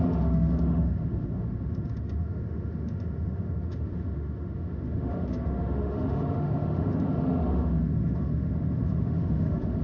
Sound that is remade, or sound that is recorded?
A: remade